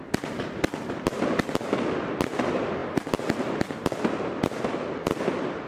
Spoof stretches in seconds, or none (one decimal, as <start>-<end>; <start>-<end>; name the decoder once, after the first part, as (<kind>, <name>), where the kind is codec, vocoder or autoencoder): none

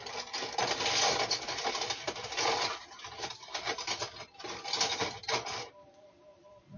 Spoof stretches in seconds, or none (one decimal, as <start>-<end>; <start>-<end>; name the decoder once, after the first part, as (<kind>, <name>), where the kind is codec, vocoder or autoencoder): none

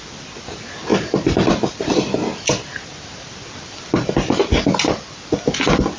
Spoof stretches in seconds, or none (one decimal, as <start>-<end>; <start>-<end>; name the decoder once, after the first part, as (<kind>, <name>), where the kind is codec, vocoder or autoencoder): none

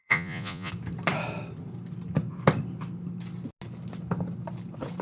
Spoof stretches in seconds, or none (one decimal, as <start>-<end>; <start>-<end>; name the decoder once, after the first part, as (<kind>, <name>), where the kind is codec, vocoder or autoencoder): 0.0-0.7 (vocoder, Vocos)

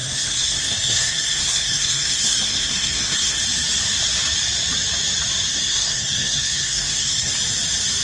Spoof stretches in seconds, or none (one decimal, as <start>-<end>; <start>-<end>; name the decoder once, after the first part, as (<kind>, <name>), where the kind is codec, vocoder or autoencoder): 0.0-3.4 (codec, SNAC); 5.5-7.3

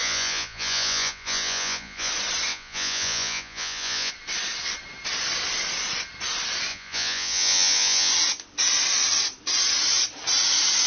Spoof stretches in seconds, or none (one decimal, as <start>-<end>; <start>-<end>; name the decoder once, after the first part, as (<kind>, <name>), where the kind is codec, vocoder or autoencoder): 0.0-2.1 (vocoder, Vocos); 2.5-4.1; 6.7-8.1

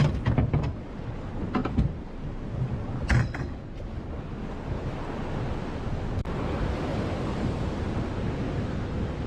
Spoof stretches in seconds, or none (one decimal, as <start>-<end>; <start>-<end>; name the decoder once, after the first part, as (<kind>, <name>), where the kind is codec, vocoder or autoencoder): 1.6-2.7 (vocoder, BigVGAN v2); 6.9-7.7